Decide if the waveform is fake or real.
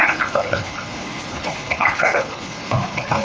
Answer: fake